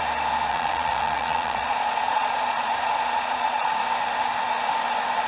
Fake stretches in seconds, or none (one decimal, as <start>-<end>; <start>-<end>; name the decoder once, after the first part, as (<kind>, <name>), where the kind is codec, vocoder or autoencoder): 0.5-3.7 (vocoder, Vocos)